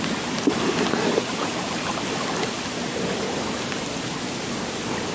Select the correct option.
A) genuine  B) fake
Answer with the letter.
A